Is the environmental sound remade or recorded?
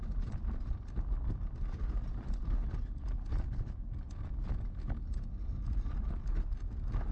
recorded